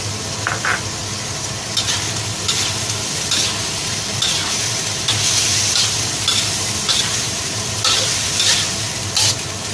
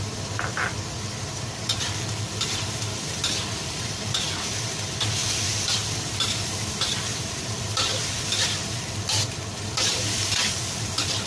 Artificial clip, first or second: second